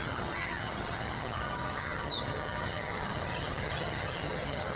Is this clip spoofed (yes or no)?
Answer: yes